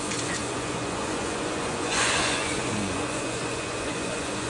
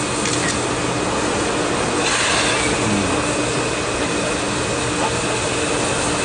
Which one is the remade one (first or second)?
first